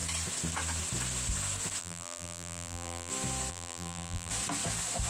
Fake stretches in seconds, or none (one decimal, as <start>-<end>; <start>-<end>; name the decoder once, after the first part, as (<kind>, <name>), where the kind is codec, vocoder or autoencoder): 1.8-3.1 (vocoder, BigVGAN v2); 3.5-4.3